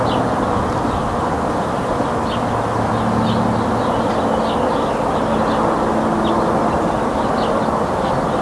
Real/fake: real